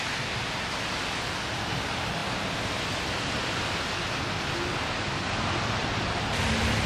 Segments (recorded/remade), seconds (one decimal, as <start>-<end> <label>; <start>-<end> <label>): 0.0-6.9 recorded

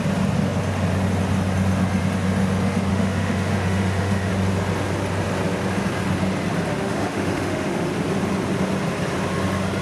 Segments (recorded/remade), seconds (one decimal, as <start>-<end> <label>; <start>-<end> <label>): 0.0-2.9 recorded; 2.9-4.3 remade; 4.3-6.7 recorded; 6.7-7.9 remade; 7.9-9.8 recorded